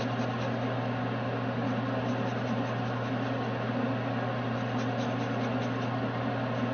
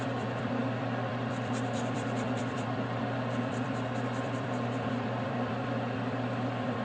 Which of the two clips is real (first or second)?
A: first